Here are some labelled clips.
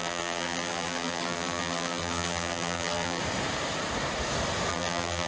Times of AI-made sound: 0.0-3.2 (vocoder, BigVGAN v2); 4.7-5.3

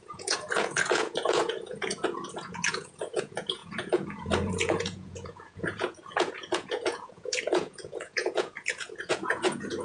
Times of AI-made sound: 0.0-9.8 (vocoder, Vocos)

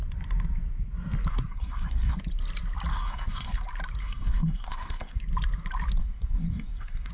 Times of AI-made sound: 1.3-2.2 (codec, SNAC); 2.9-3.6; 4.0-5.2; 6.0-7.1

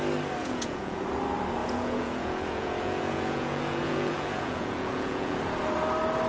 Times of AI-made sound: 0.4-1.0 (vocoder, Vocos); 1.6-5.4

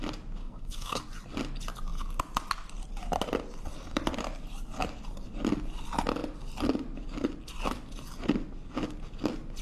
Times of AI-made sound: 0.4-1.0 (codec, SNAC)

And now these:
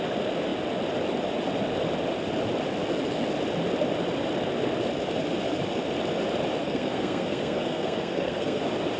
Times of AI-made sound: 6.6-8.6 (codec, SNAC)